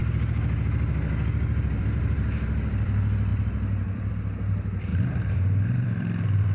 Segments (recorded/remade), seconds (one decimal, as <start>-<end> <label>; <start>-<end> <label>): 0.0-1.8 recorded; 1.8-6.5 remade